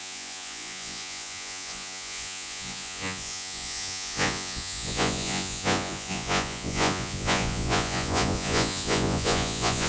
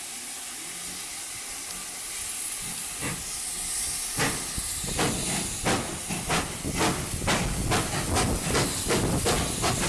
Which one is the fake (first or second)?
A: first